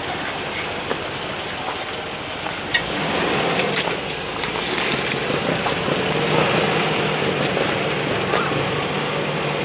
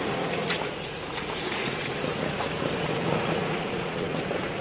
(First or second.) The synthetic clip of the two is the second